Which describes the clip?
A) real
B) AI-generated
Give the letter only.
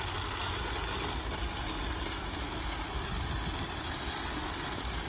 A